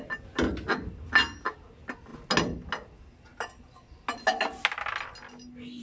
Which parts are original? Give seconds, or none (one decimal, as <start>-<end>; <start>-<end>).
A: 0.0-5.8

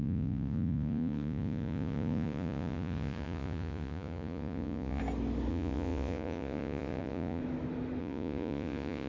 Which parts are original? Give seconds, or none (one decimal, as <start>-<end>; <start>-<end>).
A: 5.0-5.5; 7.4-8.0

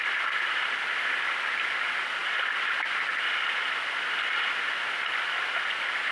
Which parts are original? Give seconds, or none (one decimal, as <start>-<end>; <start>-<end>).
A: 0.0-6.1

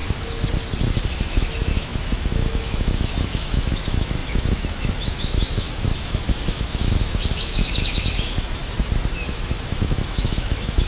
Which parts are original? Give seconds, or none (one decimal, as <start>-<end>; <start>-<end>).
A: 0.0-1.1; 8.6-9.3

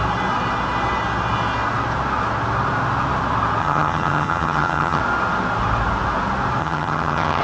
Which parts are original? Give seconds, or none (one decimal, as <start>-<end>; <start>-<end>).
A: 0.0-3.6; 5.0-6.6

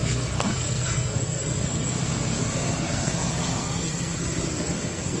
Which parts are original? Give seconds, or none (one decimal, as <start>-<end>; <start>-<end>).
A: none